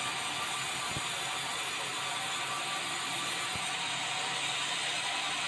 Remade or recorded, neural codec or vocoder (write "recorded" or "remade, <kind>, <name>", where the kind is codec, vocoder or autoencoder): recorded